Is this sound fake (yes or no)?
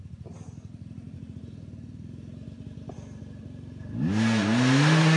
no